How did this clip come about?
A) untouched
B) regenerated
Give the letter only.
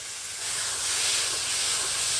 B